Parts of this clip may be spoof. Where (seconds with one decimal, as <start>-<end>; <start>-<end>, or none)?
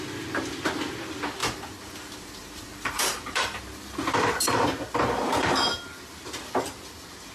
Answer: 1.4-3.6